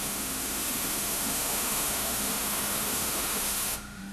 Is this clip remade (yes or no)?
yes